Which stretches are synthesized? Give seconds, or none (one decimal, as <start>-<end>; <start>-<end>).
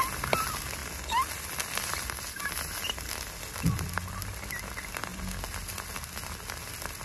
none